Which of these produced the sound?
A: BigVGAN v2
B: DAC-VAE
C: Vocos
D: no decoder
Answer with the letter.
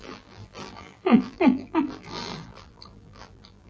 A